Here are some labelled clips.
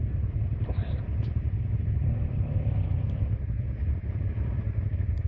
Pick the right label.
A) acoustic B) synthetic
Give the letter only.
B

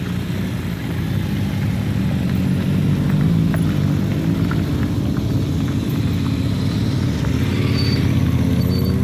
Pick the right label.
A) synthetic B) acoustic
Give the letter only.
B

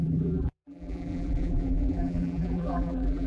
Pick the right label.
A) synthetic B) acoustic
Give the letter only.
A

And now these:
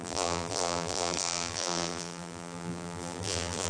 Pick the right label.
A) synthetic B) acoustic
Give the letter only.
A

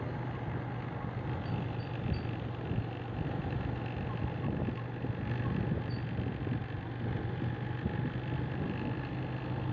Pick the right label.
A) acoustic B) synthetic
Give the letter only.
A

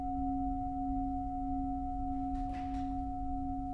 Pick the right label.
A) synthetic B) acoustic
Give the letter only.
B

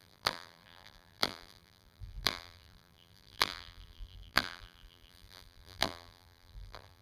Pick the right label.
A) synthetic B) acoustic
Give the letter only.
A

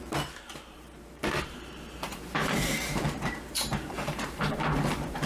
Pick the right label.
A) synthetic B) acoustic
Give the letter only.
A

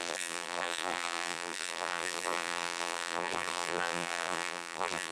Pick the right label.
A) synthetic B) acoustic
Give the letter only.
A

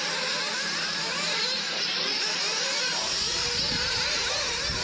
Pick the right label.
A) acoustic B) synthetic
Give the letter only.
B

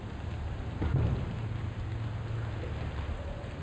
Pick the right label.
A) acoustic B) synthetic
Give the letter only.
A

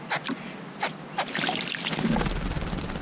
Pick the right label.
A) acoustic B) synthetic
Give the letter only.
A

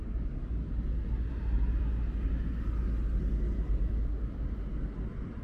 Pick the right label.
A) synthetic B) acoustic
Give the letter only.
B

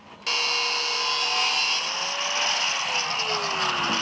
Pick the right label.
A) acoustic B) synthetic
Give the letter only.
A